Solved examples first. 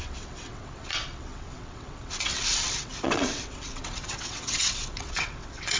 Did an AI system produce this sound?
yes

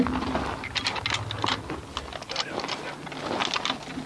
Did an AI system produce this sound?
no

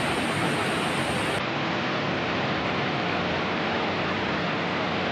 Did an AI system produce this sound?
no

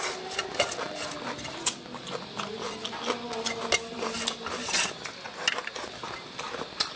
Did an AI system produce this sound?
no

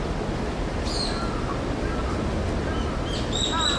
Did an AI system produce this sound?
no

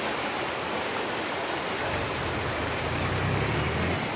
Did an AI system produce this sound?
no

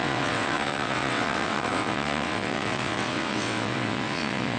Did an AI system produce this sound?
yes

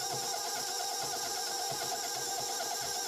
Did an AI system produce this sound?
no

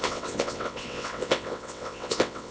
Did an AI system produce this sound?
yes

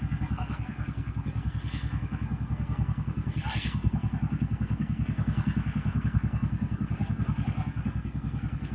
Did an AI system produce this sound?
yes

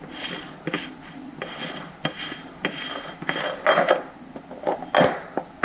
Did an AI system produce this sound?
no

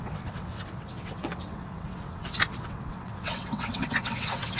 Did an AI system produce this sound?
yes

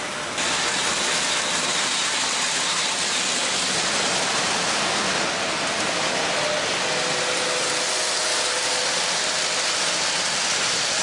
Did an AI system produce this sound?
no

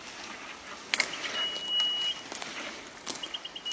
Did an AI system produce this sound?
no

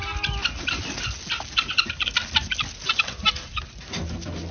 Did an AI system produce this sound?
no